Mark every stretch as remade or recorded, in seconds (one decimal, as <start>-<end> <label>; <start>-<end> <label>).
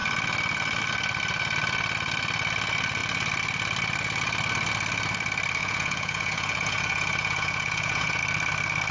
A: 0.0-5.6 recorded; 5.6-8.2 remade; 8.2-8.9 recorded